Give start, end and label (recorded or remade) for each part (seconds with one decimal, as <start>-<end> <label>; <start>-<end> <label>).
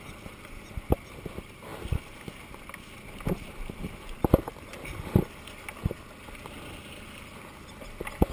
0.0-8.3 recorded